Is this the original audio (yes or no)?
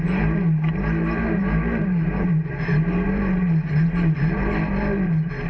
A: no